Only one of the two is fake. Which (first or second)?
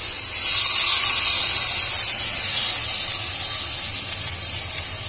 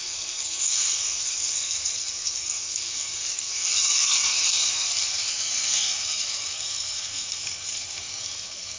second